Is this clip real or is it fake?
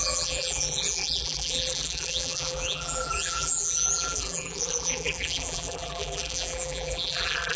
fake